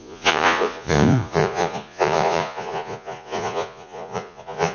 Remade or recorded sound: remade